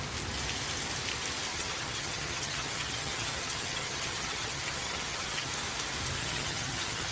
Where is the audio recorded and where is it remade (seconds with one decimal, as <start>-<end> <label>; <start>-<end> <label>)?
0.0-1.5 recorded; 1.5-5.5 remade; 5.5-6.2 recorded; 6.2-7.1 remade